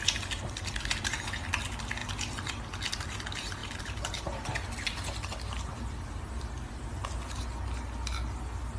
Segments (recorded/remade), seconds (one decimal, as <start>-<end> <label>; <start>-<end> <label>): 0.0-2.0 recorded; 2.0-2.6 remade; 2.6-3.6 recorded; 3.6-7.4 remade; 7.4-8.8 recorded